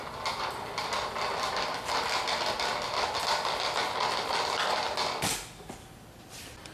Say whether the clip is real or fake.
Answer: real